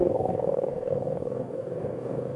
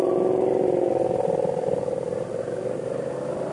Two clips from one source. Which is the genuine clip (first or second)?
second